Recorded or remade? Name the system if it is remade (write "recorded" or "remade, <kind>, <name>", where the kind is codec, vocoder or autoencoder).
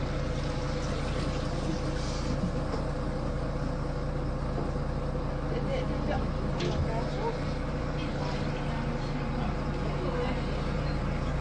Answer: recorded